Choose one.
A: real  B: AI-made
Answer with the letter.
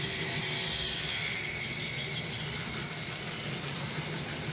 A